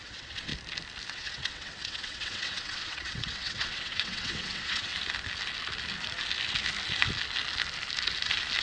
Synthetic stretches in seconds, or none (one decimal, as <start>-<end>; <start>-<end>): 0.0-0.5; 1.1-4.9